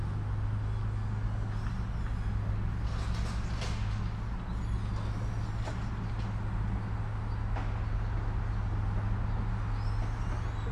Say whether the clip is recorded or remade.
recorded